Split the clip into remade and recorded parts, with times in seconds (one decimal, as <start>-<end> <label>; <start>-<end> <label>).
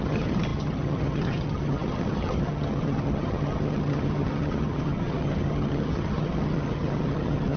0.0-7.6 remade